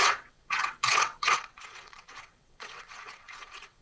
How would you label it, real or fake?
fake